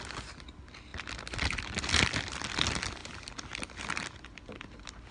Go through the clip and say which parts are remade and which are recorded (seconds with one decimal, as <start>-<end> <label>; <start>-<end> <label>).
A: 0.0-5.1 recorded